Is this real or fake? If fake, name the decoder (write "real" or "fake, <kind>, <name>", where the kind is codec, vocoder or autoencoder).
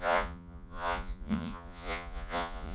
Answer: fake, vocoder, Vocos